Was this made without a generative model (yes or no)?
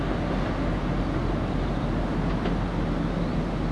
yes